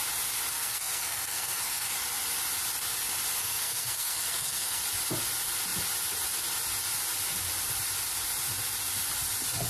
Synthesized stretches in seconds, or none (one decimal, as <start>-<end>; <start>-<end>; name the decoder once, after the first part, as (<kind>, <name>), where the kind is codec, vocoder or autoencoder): 0.5-1.9 (codec, SNAC); 3.4-4.8